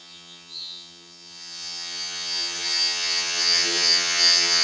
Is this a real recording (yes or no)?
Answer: no